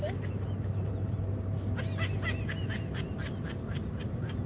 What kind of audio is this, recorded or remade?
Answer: recorded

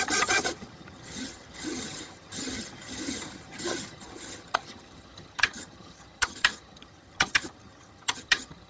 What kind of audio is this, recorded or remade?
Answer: remade